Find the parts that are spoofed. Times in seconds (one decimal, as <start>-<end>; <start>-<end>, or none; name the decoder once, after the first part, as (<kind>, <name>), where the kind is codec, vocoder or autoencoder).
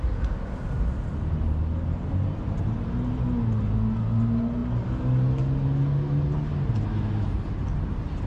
none